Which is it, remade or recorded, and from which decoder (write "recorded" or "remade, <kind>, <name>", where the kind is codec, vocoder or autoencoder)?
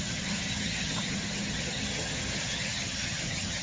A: remade, vocoder, HiFi-GAN